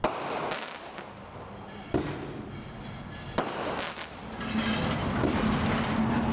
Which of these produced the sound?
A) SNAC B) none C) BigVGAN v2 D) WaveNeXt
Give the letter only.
B